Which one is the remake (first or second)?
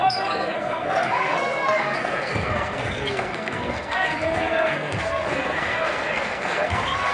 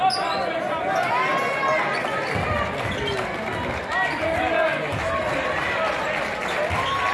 first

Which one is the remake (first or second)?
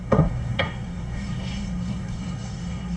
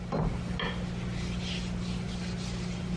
first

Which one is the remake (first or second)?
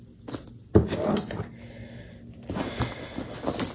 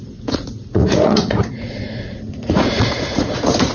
second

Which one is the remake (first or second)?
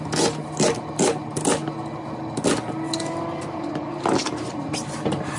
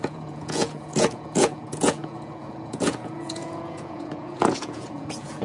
second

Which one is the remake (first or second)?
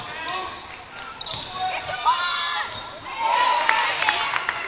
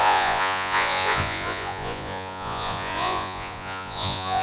second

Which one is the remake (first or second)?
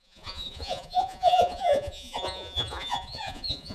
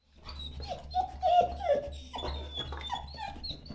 first